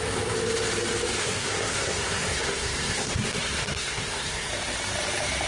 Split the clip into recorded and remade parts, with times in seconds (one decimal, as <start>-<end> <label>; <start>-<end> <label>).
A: 0.0-1.2 recorded; 1.2-4.5 remade; 4.5-5.5 recorded